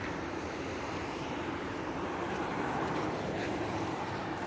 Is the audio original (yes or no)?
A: no